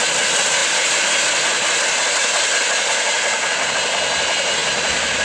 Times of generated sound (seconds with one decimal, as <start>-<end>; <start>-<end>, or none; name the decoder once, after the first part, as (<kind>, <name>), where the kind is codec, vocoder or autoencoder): none